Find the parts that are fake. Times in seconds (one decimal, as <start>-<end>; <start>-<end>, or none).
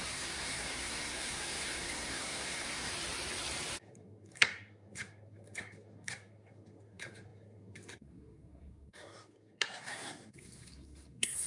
0.0-2.9; 3.8-11.5